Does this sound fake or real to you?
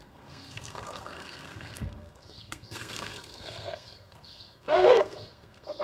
fake